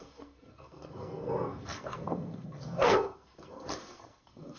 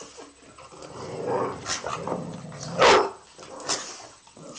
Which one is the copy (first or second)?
first